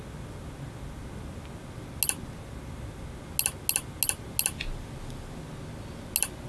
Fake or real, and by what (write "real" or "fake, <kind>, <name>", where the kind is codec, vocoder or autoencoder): real